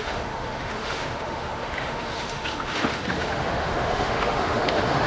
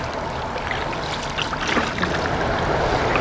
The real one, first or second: second